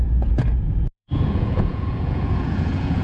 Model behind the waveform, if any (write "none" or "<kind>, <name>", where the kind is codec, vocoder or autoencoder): vocoder, Vocos